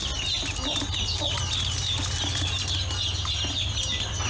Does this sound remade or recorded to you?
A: recorded